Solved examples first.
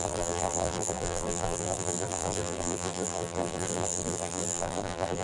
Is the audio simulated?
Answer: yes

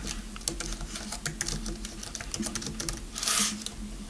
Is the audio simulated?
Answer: no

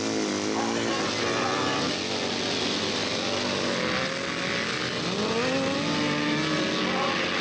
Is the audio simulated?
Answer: no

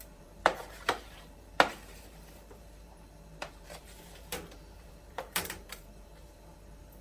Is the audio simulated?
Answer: yes